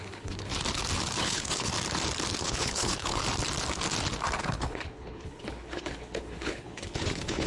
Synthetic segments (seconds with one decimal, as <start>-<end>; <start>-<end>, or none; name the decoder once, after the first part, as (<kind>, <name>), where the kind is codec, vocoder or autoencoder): 0.0-0.5 (codec, HILCodec); 1.2-1.7; 2.4-3.2; 4.4-7.5